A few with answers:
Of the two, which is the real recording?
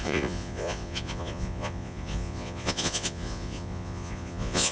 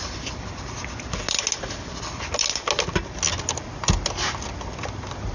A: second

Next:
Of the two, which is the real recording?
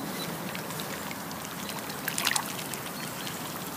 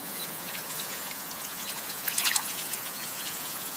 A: first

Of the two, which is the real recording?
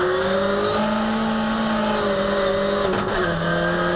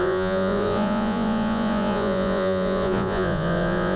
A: first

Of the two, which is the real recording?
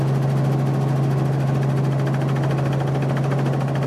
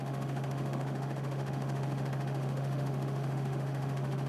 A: first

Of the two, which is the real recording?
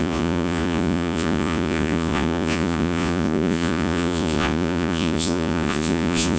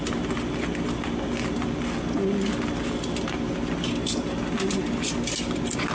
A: second